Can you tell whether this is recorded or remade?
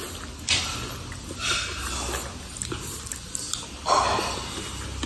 recorded